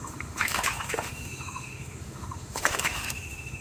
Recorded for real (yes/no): no